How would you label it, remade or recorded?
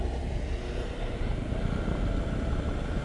recorded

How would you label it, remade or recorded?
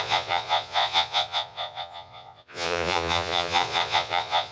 remade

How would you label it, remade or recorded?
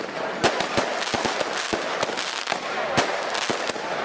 recorded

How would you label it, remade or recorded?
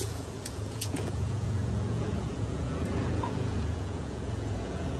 remade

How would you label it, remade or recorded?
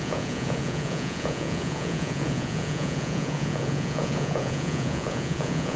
remade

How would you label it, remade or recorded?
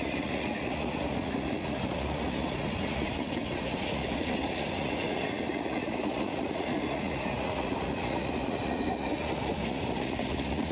remade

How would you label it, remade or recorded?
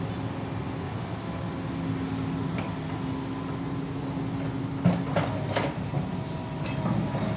recorded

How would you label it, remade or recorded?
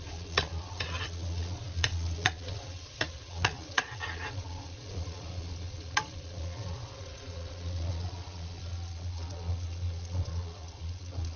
remade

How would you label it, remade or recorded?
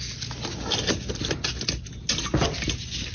recorded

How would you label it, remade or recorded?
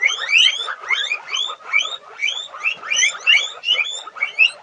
remade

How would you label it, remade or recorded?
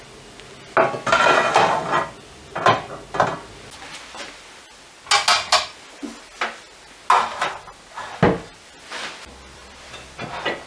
recorded